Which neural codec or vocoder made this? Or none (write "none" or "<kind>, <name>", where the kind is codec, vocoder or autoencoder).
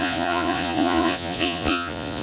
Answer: vocoder, Vocos